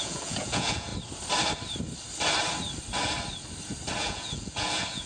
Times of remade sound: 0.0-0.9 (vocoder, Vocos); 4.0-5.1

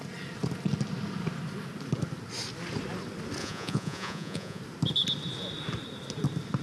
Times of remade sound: 3.4-4.6 (vocoder, Vocos)

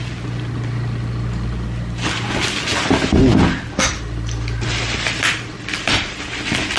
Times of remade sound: none

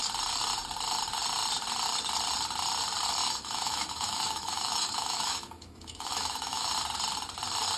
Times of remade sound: 3.2-6.7 (autoencoder, DAC-VAE)